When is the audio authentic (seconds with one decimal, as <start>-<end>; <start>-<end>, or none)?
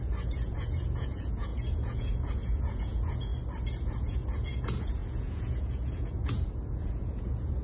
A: 3.3-3.9